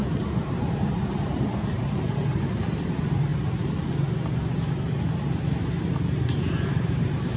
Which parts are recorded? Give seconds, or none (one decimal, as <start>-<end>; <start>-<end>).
3.3-5.9